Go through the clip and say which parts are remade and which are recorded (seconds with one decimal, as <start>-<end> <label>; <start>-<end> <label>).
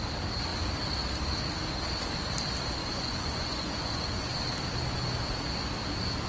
0.0-2.8 recorded; 2.8-4.3 remade; 4.3-6.3 recorded